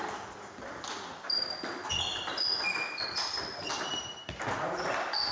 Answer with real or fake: real